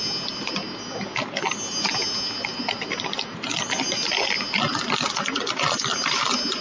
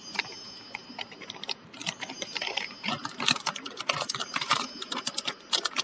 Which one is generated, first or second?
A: second